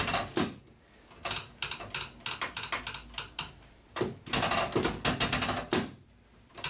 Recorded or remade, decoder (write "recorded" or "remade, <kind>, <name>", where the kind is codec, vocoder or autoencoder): recorded